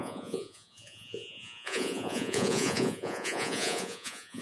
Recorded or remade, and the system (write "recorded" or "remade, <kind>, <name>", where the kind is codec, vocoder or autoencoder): remade, vocoder, Vocos